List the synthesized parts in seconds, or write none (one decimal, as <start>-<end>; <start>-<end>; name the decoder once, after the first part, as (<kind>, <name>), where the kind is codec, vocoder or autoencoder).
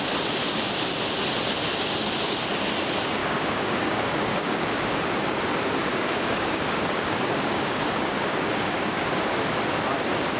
3.2-5.0 (codec, DAC); 5.9-9.0